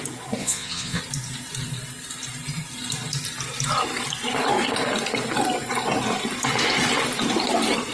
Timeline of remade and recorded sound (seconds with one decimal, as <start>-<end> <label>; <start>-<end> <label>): 0.0-0.4 recorded; 0.4-1.0 remade; 1.0-7.9 recorded